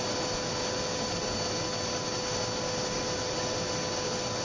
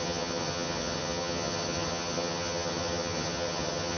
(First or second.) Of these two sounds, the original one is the first